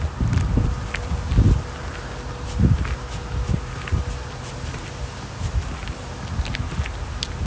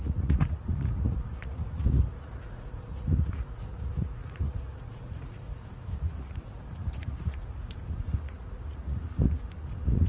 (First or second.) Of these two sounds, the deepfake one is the second